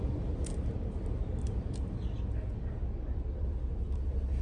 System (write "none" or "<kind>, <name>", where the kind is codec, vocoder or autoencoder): none